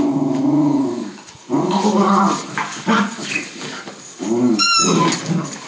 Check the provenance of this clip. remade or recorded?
remade